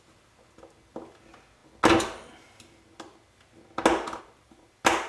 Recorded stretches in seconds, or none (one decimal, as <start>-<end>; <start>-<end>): 0.0-5.1